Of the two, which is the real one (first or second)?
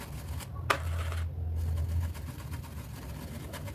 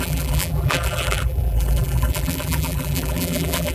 first